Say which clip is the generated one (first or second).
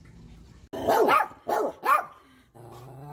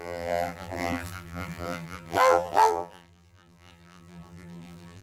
second